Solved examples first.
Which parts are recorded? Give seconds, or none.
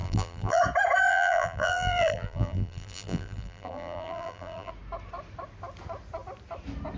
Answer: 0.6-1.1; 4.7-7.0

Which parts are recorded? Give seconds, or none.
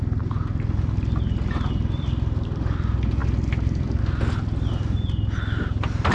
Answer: 0.0-6.1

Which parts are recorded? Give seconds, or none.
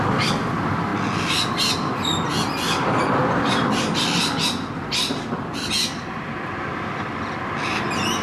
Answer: 0.9-4.7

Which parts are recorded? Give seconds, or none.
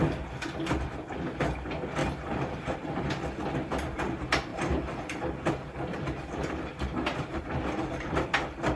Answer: 0.0-2.0; 3.1-4.5; 7.4-8.8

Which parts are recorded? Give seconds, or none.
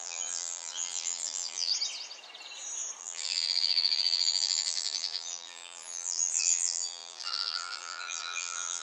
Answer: 1.7-3.0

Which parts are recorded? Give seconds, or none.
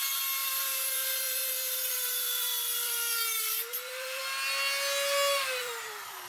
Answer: 0.0-0.4; 4.2-5.6